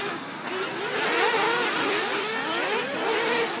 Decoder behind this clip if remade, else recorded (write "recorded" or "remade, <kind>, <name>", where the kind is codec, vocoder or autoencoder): recorded